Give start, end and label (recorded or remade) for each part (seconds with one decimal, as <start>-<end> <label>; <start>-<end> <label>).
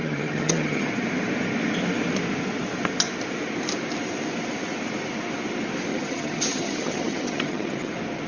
0.0-0.9 remade; 0.9-5.9 recorded; 5.9-7.9 remade; 7.9-8.3 recorded